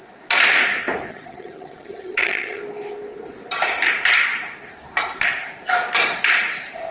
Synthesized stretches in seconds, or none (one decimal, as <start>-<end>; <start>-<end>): 1.1-2.6